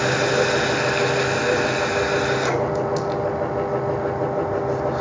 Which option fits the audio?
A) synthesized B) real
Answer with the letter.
B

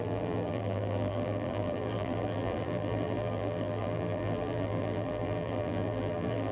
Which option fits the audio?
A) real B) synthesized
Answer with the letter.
B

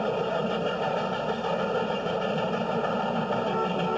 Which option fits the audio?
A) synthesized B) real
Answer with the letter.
B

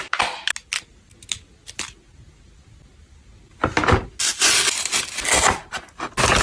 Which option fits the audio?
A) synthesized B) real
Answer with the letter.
B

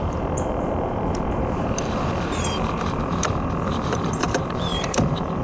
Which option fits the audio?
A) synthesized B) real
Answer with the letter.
A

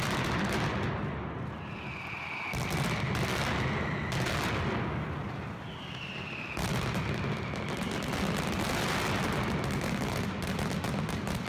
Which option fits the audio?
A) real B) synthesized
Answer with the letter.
A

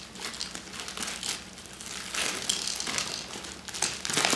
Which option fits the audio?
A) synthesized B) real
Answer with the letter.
B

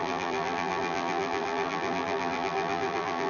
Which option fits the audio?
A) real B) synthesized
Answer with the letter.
B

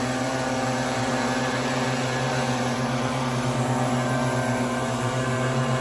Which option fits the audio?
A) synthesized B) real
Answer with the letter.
A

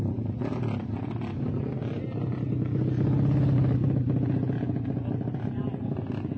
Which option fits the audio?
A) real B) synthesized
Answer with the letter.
A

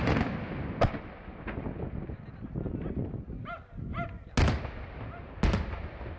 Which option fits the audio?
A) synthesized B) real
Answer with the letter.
B